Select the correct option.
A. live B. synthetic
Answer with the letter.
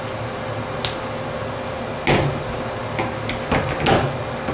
A